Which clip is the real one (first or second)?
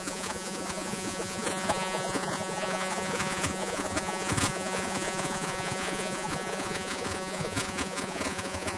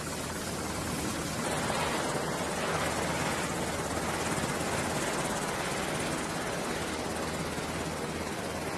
second